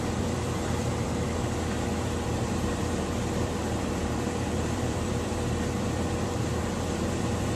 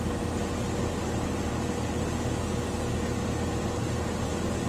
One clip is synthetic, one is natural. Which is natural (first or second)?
second